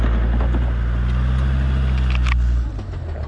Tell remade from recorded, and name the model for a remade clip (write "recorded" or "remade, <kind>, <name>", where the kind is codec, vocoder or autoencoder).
recorded